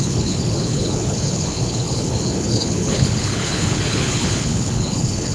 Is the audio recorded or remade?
remade